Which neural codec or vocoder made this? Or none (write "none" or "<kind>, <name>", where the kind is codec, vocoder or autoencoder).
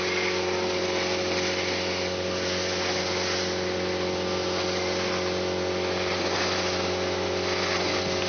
none